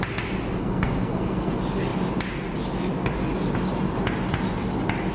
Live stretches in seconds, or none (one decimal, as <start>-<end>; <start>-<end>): 0.0-0.6; 1.5-5.1